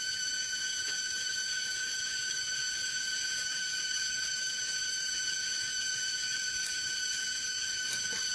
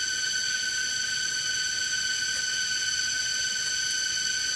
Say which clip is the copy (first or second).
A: first